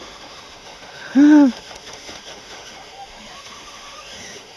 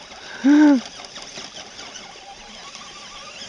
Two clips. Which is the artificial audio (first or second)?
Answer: first